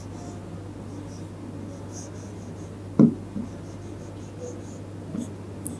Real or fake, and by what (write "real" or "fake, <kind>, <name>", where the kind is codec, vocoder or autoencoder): real